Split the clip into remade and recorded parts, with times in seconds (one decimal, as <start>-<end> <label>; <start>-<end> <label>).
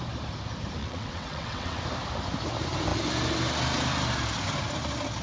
0.0-0.8 recorded; 0.8-1.8 remade; 1.8-5.2 recorded